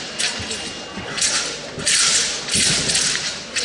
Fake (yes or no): no